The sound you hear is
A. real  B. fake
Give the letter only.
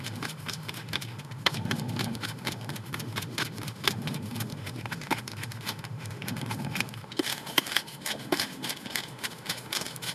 B